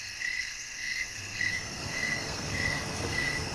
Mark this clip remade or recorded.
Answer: remade